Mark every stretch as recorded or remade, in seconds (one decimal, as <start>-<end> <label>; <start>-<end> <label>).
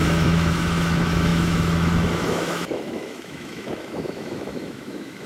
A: 0.0-5.3 remade